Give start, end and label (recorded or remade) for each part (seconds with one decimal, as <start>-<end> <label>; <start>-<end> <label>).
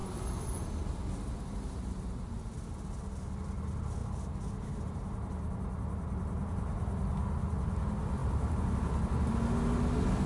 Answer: 0.0-1.0 remade; 1.0-10.3 recorded